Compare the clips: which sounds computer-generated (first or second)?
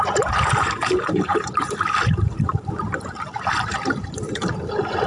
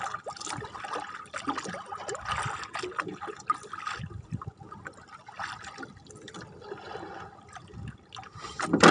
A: first